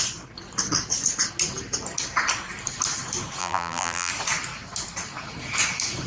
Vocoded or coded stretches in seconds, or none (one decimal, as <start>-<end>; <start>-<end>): 3.4-4.1